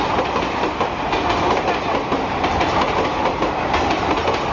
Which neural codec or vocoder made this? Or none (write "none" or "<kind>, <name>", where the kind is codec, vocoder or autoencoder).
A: none